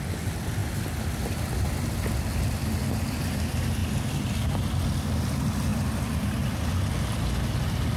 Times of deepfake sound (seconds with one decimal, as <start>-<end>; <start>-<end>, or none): none